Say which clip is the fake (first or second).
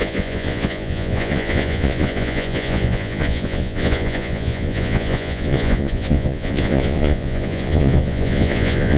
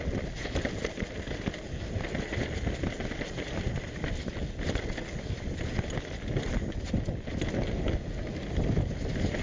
first